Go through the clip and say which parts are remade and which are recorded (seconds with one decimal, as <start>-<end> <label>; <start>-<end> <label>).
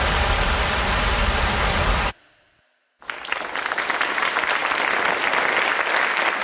0.0-6.4 recorded